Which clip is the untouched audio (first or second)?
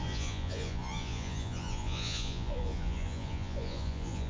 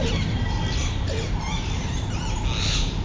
second